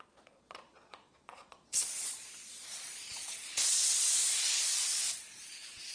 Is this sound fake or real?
fake